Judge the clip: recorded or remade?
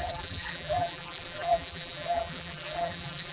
remade